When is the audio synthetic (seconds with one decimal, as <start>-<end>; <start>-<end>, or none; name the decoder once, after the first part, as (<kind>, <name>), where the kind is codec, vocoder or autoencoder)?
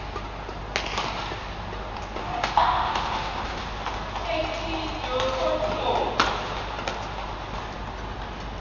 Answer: 2.2-3.6 (autoencoder, DAC-VAE)